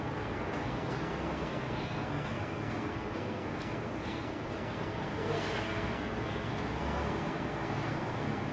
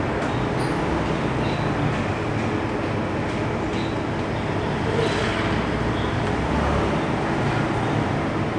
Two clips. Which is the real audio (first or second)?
second